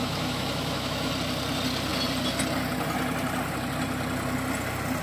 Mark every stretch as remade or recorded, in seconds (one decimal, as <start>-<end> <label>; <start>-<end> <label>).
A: 0.0-1.1 remade; 1.1-5.0 recorded